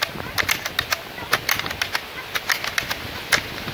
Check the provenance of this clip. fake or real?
real